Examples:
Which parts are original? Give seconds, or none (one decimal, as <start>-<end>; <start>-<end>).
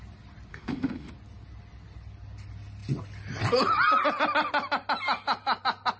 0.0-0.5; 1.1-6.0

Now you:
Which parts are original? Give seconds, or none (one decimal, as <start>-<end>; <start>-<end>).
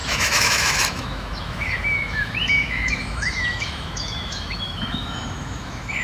none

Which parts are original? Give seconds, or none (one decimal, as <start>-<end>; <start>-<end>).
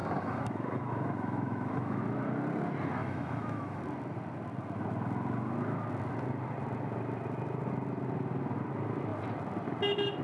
2.0-3.0; 3.8-10.2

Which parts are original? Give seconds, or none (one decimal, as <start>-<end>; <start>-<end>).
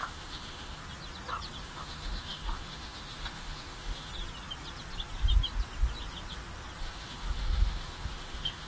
0.8-1.6; 4.1-6.8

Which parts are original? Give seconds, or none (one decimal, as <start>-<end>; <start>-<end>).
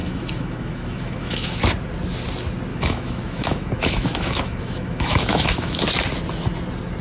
1.6-2.7; 5.8-7.0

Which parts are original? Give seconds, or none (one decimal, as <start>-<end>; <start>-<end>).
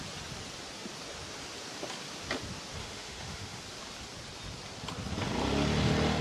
0.0-2.8; 3.6-6.2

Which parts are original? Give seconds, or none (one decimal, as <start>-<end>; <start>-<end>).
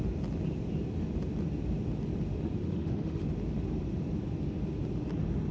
0.0-2.6; 3.2-5.5